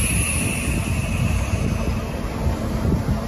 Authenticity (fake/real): real